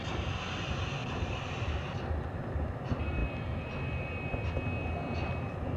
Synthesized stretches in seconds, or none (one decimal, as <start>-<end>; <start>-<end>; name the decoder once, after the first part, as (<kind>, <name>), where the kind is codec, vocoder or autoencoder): 1.0-1.8 (vocoder, BigVGAN v2); 3.2-4.5